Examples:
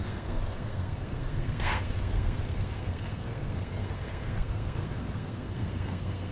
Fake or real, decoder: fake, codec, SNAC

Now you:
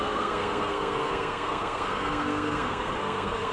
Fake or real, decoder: fake, codec, SNAC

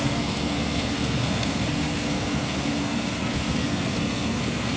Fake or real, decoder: fake, codec, SNAC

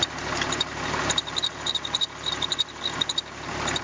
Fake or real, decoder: real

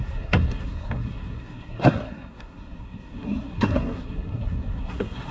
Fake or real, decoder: fake, codec, SNAC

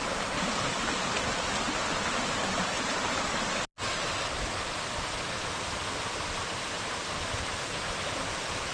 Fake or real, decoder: real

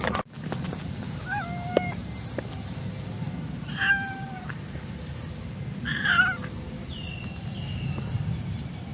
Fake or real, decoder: real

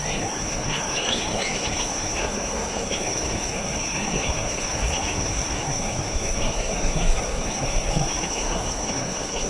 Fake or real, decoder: fake, codec, SNAC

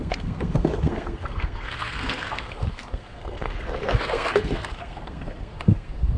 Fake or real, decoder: fake, codec, SNAC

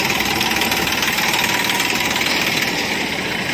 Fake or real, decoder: real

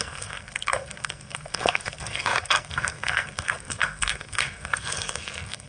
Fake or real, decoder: fake, codec, SNAC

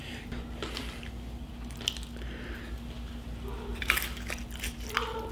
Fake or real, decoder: real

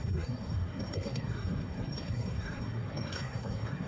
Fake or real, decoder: fake, codec, SNAC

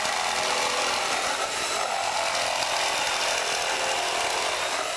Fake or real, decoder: real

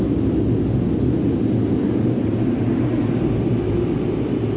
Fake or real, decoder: real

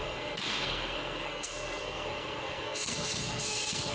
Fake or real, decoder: fake, codec, SNAC